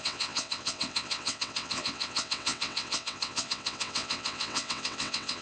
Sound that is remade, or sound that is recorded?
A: remade